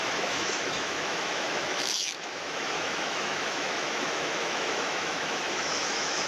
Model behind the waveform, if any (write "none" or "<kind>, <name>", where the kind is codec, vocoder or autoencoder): autoencoder, DAC-VAE